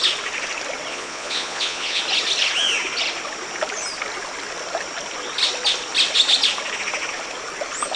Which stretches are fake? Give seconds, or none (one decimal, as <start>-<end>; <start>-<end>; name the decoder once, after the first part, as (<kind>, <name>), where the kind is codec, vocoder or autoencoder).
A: 0.9-2.0 (vocoder, Vocos)